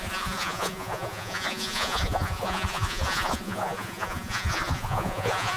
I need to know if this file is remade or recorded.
remade